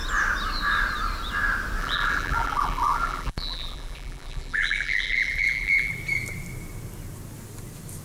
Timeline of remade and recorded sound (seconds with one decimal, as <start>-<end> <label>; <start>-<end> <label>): 0.0-1.8 recorded; 1.8-5.9 remade; 5.9-8.0 recorded